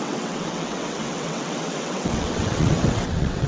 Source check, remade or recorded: remade